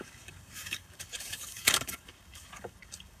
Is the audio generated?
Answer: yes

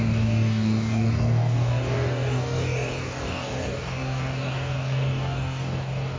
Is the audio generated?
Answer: yes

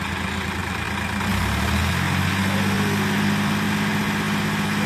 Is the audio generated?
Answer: no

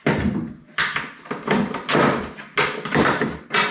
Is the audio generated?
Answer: no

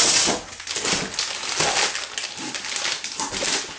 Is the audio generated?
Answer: no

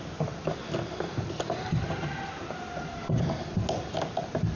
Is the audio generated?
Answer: no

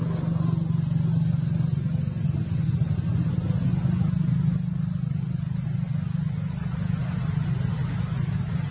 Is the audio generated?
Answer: no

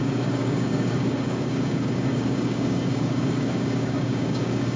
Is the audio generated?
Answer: yes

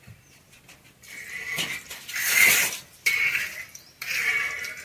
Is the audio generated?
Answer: no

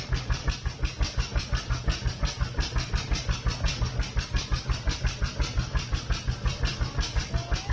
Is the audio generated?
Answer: no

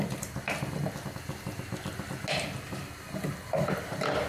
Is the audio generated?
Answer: no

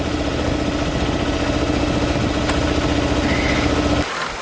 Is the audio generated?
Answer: no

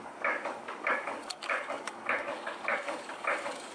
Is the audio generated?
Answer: yes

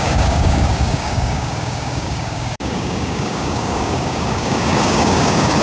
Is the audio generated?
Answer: yes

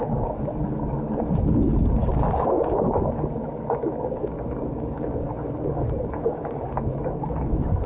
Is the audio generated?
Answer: yes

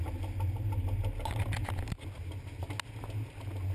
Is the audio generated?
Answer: no